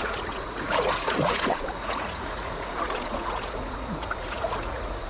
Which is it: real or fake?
fake